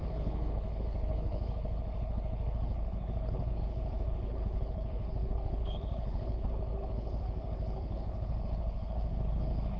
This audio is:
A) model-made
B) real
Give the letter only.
A